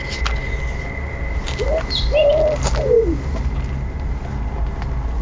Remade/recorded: recorded